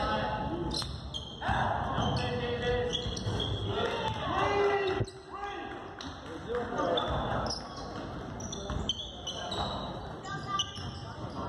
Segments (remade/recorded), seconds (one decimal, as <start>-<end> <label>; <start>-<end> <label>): 0.0-11.5 recorded